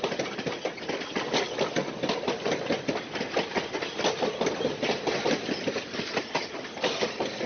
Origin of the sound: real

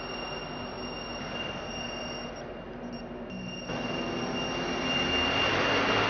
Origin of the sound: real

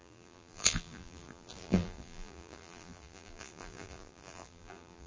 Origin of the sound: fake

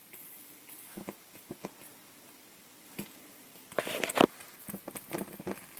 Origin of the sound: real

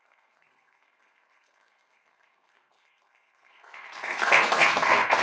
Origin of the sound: fake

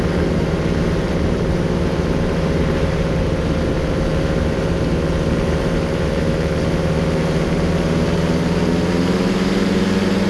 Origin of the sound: fake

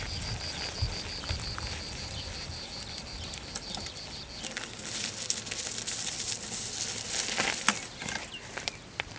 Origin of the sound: real